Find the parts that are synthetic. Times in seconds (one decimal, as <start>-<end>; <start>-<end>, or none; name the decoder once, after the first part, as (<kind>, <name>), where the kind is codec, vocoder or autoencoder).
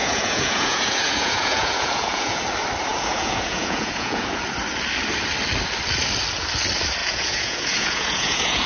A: 0.0-2.4 (vocoder, Vocos); 2.9-4.4; 7.0-8.7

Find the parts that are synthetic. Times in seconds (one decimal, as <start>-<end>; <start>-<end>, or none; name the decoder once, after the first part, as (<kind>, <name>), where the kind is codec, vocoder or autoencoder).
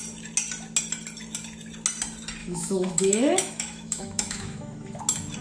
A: 2.4-5.0 (autoencoder, DAC-VAE)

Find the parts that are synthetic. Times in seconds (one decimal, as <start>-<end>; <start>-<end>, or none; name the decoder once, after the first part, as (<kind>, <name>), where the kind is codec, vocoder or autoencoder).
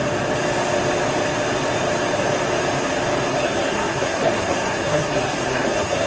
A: 3.3-6.1 (codec, SNAC)